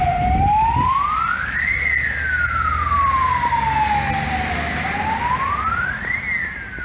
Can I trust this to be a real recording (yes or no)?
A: yes